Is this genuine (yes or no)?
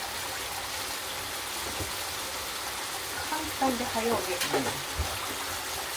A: yes